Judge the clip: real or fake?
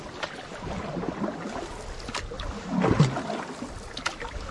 real